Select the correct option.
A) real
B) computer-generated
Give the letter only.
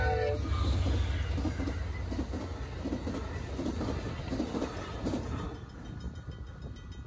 A